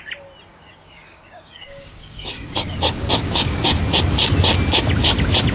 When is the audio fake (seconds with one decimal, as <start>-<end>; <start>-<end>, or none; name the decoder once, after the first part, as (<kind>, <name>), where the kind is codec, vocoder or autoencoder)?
0.5-3.8 (codec, DAC)